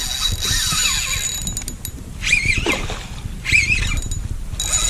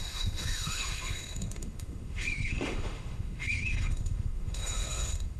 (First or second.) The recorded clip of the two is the first